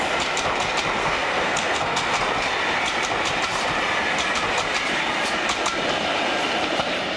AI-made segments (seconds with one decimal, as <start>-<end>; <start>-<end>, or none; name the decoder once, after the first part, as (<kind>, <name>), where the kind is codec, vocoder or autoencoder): 1.0-2.2 (codec, SNAC)